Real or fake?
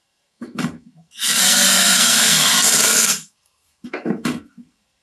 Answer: fake